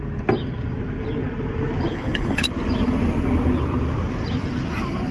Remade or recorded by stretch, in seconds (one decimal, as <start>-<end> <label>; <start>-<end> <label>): 0.0-1.9 recorded; 1.9-2.5 remade; 2.5-5.1 recorded